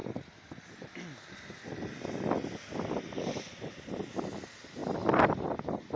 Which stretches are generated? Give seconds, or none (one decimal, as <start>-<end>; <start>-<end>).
none